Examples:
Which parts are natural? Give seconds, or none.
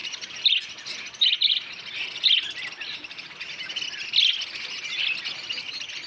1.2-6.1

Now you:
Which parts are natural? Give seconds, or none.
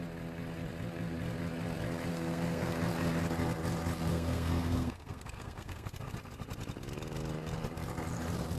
0.0-2.1; 2.7-4.1; 6.1-8.6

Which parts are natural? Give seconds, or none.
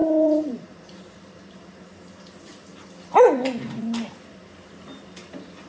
1.0-5.7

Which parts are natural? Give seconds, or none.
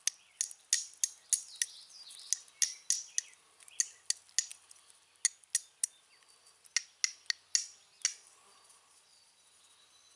0.0-10.2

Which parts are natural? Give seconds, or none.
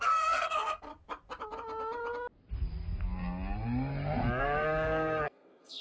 0.9-4.4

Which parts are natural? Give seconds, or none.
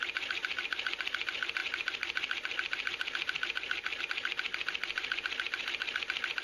0.0-6.4